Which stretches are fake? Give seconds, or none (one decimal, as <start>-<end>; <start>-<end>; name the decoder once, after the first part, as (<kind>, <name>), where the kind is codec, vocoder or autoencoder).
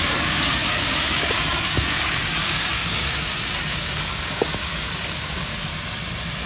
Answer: 0.0-5.7 (codec, DAC)